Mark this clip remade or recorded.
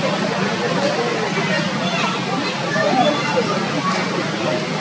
recorded